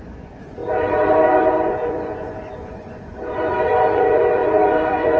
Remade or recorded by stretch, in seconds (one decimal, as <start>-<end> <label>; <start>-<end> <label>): 0.0-5.2 remade